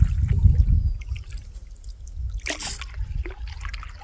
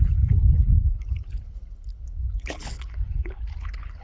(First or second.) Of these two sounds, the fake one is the second